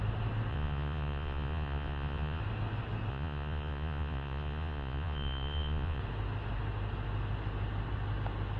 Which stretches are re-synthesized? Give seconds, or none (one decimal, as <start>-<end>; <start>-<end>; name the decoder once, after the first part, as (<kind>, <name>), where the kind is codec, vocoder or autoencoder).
0.5-2.4 (vocoder, Vocos); 3.1-6.0